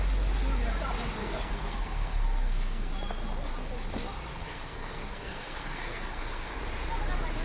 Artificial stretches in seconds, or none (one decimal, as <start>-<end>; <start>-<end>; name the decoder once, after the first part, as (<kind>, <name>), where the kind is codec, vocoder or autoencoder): 1.2-2.9 (codec, SNAC); 4.4-6.6